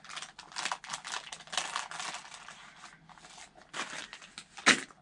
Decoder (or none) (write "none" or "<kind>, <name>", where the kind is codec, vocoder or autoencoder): none